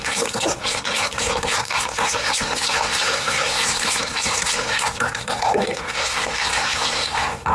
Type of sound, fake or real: fake